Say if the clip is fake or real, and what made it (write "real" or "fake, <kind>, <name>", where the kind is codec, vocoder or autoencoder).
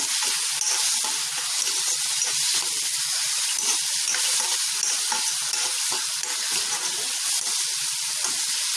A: real